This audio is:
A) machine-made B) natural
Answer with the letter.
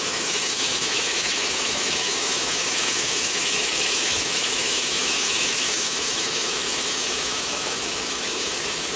A